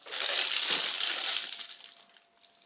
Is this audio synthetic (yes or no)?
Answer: no